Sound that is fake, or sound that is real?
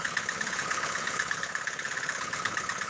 fake